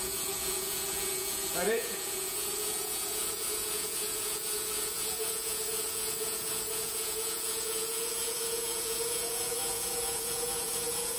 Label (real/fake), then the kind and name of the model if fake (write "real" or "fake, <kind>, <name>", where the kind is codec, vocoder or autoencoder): fake, vocoder, Vocos